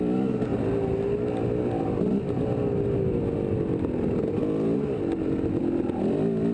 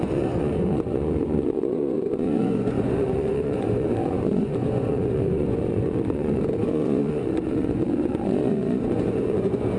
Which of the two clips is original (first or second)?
first